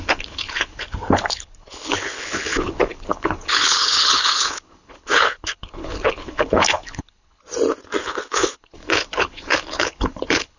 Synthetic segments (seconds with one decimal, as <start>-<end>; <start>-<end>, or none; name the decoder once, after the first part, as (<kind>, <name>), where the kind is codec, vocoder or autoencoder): 0.0-7.4 (codec, HILCodec); 8.0-10.6